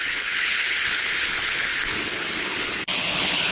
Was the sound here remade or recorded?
remade